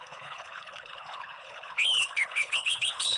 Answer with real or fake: fake